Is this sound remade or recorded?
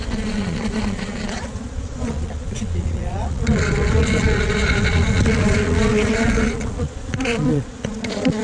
remade